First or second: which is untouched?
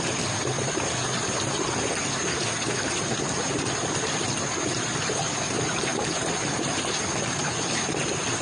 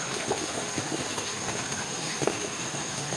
first